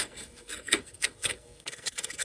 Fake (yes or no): yes